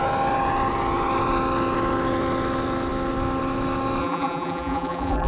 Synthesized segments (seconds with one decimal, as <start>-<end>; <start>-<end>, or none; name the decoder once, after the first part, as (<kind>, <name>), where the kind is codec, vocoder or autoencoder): 4.0-5.3 (vocoder, BigVGAN v2)